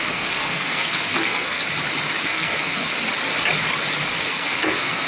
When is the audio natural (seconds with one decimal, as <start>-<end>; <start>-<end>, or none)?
1.6-2.2; 2.9-4.2